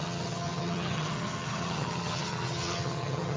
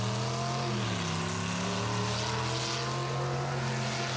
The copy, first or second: first